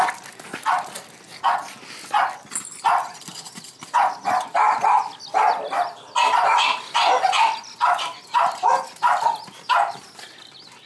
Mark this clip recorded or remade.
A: recorded